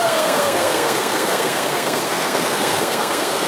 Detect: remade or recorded remade